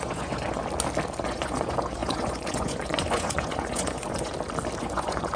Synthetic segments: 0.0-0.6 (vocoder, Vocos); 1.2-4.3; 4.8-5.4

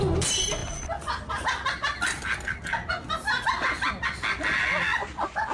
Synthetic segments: none

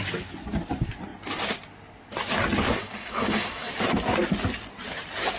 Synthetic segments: 2.8-3.7 (codec, DAC)